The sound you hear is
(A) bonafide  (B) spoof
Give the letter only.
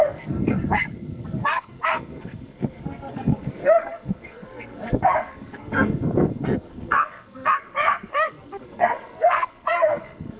B